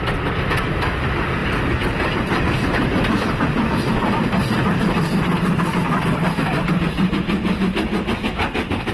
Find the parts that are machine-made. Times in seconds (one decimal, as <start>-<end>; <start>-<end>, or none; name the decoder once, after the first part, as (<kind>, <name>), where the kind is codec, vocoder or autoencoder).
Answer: 1.4-6.7 (vocoder, BigVGAN v2)